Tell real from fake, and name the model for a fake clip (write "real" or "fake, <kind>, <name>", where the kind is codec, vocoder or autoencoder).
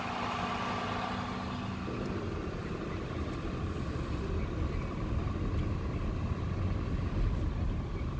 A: real